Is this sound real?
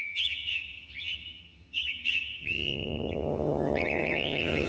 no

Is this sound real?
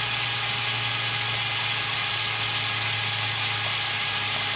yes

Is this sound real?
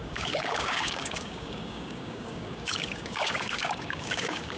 no